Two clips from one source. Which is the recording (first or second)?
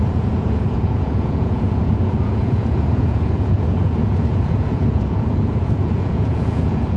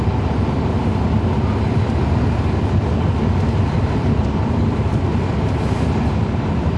second